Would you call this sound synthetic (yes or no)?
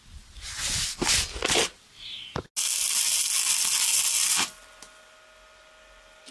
no